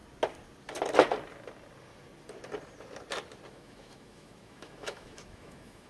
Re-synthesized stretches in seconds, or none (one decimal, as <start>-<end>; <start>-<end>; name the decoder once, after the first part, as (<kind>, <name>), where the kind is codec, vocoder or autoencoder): 3.5-5.9 (autoencoder, DAC-VAE)